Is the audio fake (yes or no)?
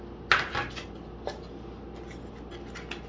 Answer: no